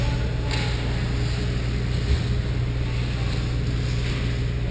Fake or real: real